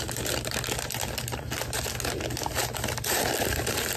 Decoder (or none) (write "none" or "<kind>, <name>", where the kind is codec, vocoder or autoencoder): none